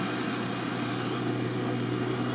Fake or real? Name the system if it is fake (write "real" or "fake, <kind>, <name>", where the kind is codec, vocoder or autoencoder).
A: real